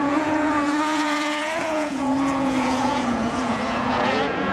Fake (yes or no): yes